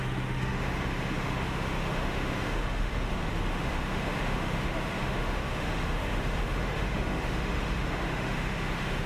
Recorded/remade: remade